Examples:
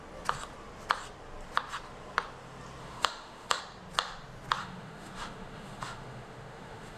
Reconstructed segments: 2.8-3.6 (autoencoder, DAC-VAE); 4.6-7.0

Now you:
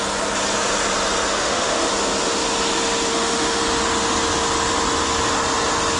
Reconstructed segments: 1.4-1.9 (autoencoder, DAC-VAE); 3.1-3.6

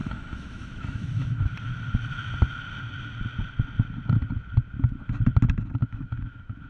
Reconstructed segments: 0.0-1.5 (autoencoder, DAC-VAE); 5.8-6.7

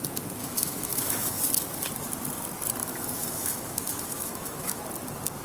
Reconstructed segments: 0.4-1.4 (autoencoder, DAC-VAE); 2.8-4.8

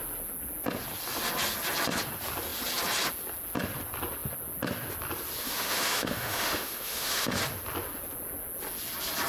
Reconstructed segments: 5.4-7.3 (autoencoder, DAC-VAE)

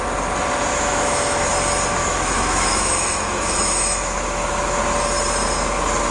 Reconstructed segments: 0.7-1.5 (autoencoder, DAC-VAE); 2.0-4.8